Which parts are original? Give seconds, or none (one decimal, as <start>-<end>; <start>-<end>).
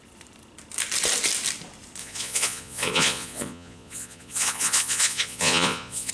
0.0-2.0